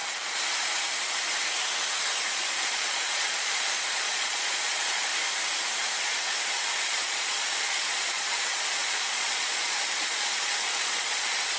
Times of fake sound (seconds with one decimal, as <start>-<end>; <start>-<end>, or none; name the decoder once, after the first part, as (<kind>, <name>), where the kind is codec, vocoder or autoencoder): 2.3-5.1 (vocoder, Vocos); 6.4-11.6